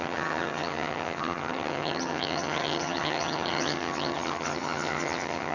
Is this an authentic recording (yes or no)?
no